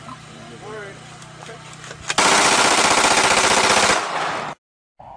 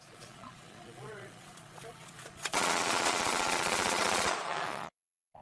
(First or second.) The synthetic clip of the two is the second